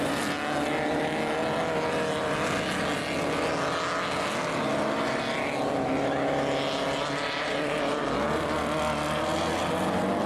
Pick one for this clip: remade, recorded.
recorded